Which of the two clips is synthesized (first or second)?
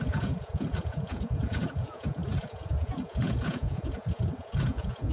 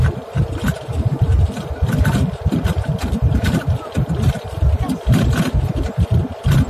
first